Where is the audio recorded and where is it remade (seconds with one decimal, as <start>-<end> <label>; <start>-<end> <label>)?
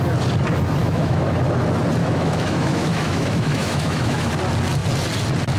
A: 0.0-0.8 recorded; 0.8-1.3 remade; 1.3-2.0 recorded; 2.0-4.3 remade; 4.3-5.6 recorded